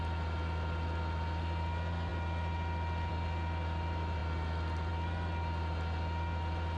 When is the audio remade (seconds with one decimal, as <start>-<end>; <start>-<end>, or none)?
none